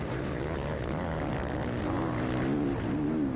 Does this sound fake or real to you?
real